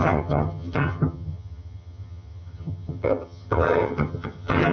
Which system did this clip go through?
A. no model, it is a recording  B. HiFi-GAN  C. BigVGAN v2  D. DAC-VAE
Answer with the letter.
B